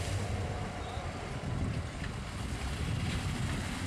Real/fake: real